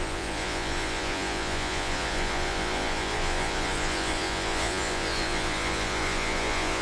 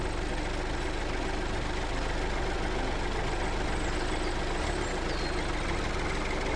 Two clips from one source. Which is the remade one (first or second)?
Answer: first